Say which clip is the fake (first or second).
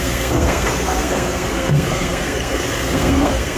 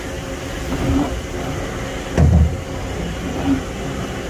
first